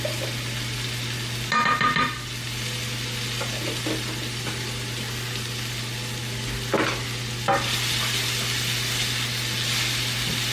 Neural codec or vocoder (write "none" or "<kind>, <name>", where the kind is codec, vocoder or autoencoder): none